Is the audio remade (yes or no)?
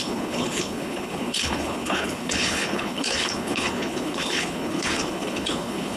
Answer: yes